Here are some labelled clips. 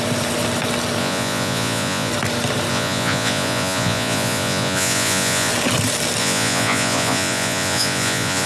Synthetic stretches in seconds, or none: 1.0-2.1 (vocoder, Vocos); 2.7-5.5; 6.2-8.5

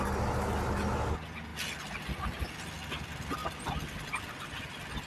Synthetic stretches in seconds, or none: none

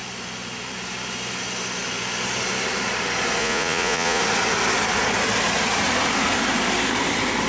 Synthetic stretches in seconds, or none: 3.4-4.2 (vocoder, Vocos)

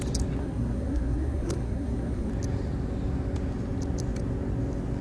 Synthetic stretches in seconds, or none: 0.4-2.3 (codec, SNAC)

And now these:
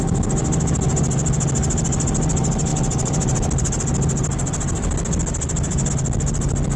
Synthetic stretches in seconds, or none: 2.7-5.9 (vocoder, BigVGAN v2)

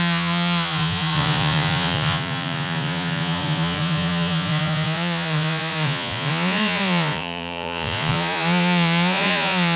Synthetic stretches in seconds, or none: 0.0-9.8 (vocoder, Vocos)

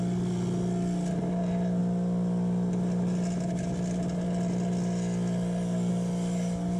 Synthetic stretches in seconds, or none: none